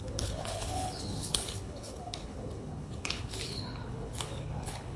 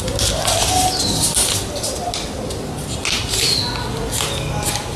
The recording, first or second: second